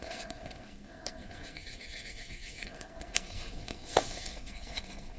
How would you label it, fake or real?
fake